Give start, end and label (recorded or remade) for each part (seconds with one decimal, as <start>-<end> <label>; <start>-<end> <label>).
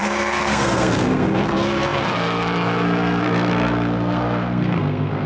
0.0-5.3 remade